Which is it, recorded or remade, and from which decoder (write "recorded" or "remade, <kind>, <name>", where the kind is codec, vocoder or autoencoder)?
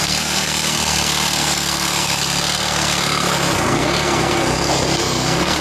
remade, codec, SNAC